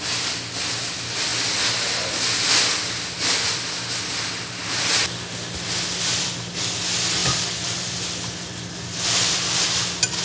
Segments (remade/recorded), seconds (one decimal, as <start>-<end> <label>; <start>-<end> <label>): 0.0-10.2 recorded